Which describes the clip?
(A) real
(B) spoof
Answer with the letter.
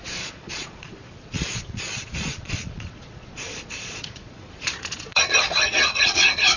B